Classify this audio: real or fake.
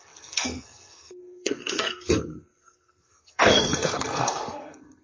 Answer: fake